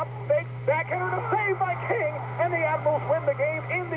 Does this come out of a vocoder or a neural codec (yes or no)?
no